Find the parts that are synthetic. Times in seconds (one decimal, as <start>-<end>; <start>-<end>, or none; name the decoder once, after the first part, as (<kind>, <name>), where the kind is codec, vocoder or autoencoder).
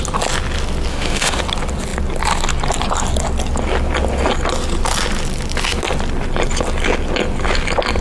0.9-1.4 (autoencoder, DAC-VAE)